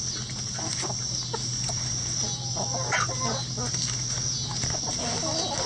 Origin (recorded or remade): recorded